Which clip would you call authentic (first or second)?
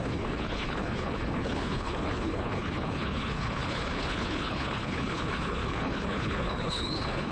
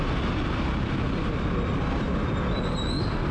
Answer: second